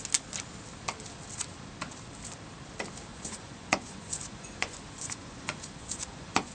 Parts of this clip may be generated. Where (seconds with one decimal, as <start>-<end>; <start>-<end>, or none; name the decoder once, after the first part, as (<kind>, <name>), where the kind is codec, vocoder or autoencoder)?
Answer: 3.1-6.5 (vocoder, Vocos)